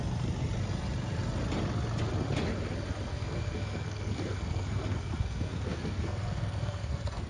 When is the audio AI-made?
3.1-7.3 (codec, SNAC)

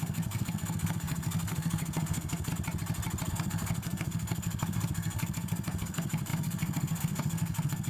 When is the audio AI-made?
0.0-2.5 (codec, SNAC); 3.3-7.9

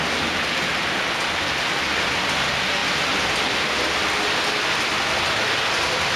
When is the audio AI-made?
none